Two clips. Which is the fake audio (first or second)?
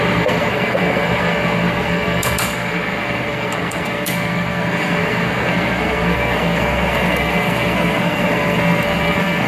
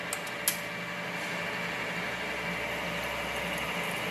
first